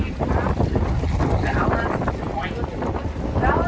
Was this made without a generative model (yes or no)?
yes